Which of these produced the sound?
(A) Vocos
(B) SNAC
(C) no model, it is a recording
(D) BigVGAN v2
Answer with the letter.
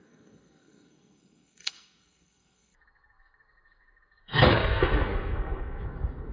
B